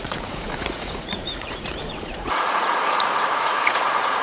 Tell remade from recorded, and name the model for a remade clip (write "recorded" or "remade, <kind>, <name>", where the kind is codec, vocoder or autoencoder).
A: remade, vocoder, Vocos